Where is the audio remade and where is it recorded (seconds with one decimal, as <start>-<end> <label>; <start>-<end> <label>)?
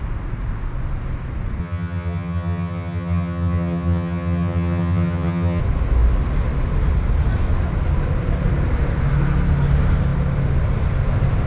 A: 0.0-1.6 recorded; 1.6-5.6 remade; 5.6-11.5 recorded